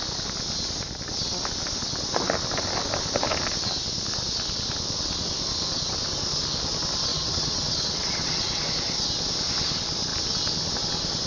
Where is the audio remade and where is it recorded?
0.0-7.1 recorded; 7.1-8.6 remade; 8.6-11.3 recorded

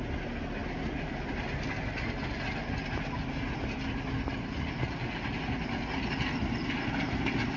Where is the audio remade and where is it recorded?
0.0-7.6 recorded

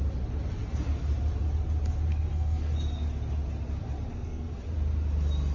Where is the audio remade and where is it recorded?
0.0-2.1 recorded; 2.1-2.7 remade; 2.7-4.1 recorded; 4.1-4.6 remade; 4.6-5.5 recorded